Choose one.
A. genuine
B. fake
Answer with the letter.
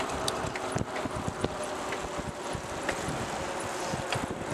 A